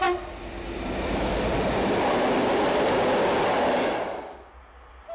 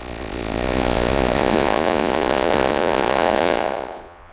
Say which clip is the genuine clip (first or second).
first